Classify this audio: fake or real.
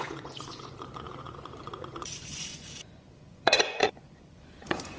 fake